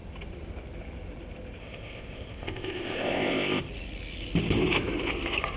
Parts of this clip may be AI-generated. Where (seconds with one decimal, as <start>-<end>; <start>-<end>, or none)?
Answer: 1.6-3.7

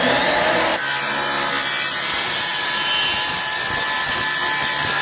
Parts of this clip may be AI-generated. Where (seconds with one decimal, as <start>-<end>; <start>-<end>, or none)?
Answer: none

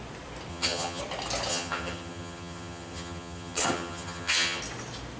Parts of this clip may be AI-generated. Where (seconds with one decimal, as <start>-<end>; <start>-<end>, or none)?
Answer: 0.5-1.0; 1.5-4.6

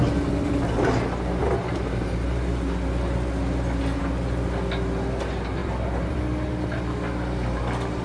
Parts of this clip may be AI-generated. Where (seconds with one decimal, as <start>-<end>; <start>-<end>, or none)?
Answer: 5.6-6.2

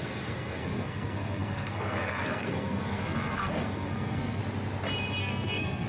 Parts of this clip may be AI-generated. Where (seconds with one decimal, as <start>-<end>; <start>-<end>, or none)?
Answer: 0.0-4.4; 5.2-5.9

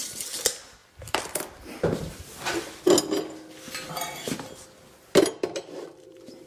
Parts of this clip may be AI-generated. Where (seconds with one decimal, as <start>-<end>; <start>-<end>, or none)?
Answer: none